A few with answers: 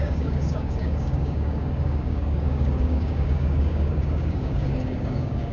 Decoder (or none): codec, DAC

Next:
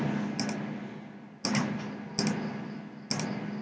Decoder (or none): none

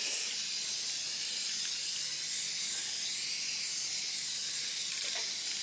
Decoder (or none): none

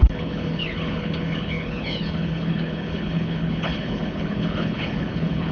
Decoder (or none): codec, HILCodec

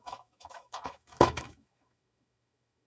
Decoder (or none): autoencoder, DAC-VAE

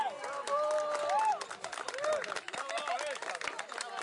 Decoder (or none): none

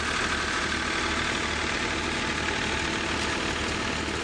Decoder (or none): none